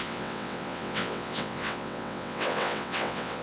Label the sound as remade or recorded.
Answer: remade